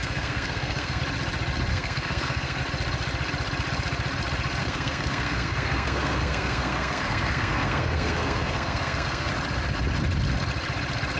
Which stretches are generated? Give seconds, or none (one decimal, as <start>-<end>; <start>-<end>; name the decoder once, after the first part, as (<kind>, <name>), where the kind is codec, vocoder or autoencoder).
0.0-1.0 (codec, SNAC); 1.7-2.6; 4.6-9.3

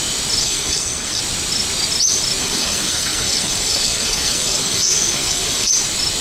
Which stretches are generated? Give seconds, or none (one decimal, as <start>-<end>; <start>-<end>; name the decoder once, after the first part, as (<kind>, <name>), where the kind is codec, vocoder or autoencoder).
0.4-1.2 (codec, SNAC); 2.4-5.7

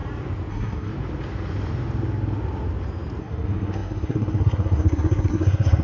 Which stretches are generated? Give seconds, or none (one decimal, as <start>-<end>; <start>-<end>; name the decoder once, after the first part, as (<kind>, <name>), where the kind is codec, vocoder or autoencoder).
0.5-0.9 (codec, SNAC); 3.2-5.8